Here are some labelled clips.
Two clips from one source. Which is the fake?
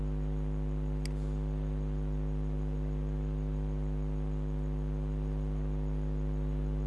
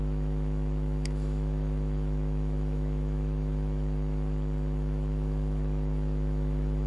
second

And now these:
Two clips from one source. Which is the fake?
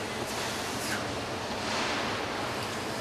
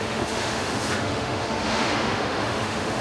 second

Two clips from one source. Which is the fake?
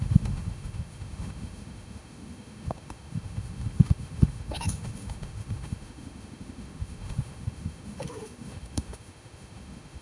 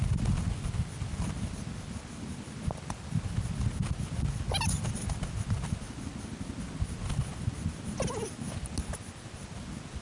first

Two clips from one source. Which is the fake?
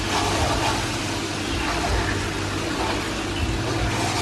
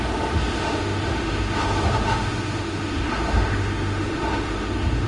second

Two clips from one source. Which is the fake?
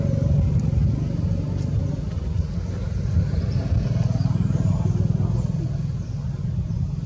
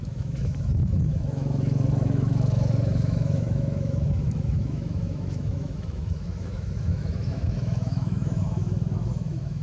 second